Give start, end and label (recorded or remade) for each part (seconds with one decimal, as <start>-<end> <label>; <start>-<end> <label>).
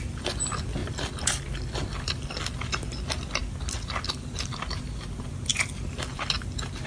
0.0-6.9 recorded